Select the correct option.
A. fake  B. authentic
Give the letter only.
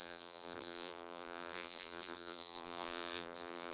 A